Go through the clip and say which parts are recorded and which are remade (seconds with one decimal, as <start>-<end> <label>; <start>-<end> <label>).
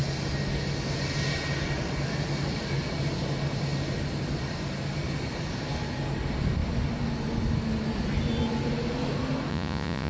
0.0-9.5 recorded; 9.5-10.1 remade